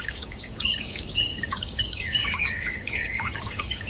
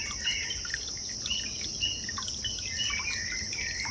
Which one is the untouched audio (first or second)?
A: second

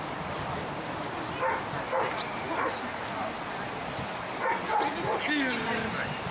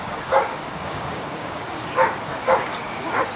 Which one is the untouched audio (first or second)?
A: first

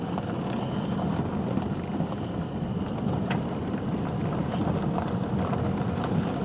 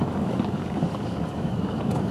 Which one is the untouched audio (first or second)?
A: first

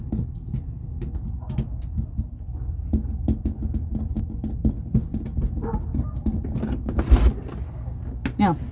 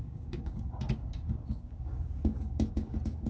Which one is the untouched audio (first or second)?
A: first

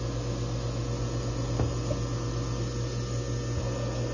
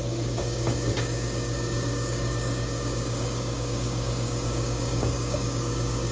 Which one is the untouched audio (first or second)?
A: first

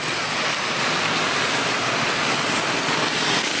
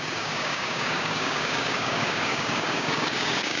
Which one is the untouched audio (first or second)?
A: first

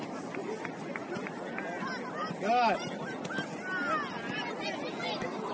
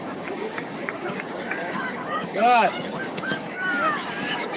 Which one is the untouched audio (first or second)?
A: first